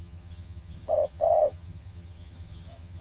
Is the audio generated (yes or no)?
yes